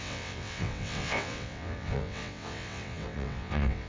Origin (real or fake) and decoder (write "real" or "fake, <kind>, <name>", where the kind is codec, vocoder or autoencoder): fake, vocoder, WaveNeXt